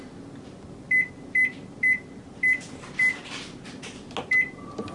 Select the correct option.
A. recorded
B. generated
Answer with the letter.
A